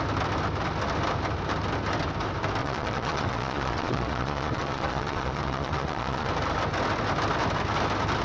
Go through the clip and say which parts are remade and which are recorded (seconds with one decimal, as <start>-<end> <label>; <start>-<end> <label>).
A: 0.0-2.6 recorded; 2.6-6.3 remade; 6.3-8.2 recorded